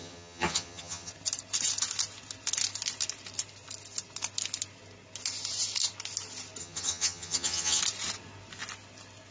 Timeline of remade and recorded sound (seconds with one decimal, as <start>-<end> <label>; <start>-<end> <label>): 0.0-1.1 remade; 1.1-6.6 recorded; 6.6-7.8 remade; 7.8-9.3 recorded